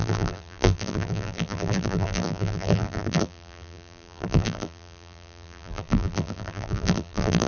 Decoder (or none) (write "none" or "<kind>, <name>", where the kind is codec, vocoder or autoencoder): vocoder, BigVGAN v2